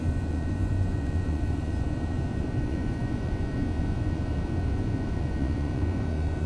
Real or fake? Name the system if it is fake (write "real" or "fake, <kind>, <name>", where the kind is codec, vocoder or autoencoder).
fake, vocoder, Vocos